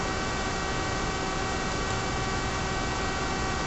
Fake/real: real